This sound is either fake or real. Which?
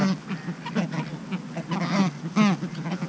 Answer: real